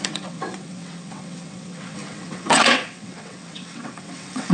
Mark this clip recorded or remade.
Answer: remade